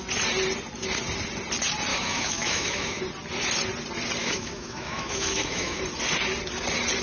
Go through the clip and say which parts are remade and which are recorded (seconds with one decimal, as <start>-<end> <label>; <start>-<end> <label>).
0.0-1.9 recorded; 1.9-3.0 remade; 3.0-4.2 recorded; 4.2-5.8 remade; 5.8-7.0 recorded